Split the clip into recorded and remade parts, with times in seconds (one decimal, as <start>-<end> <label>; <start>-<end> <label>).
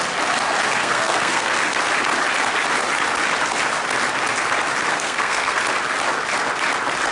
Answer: 0.0-0.8 recorded; 0.8-1.6 remade; 1.6-4.9 recorded; 4.9-5.6 remade; 5.6-7.1 recorded